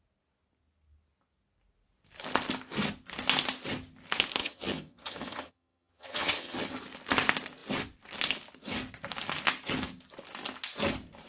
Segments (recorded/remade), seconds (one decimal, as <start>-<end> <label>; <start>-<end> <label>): 0.0-4.4 recorded; 4.4-6.7 remade; 6.7-11.3 recorded